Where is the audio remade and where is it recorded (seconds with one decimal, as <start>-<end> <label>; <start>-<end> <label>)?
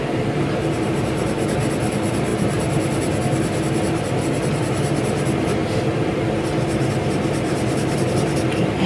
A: 0.0-8.9 recorded